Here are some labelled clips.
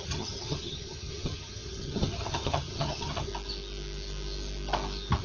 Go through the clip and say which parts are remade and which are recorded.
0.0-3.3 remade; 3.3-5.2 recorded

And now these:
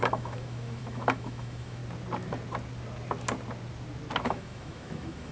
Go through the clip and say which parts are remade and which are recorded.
0.0-1.8 remade; 1.8-4.2 recorded; 4.2-5.3 remade